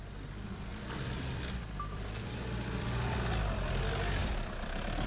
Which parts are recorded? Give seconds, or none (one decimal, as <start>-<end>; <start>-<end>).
0.0-0.7; 3.8-4.2